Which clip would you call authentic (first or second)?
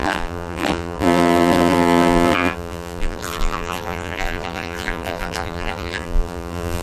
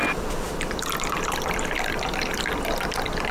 second